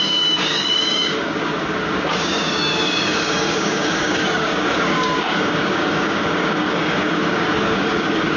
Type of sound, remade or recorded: remade